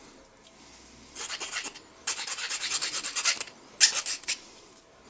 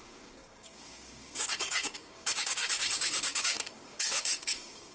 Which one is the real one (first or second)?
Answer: first